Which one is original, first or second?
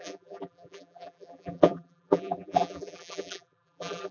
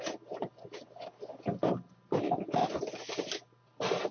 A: second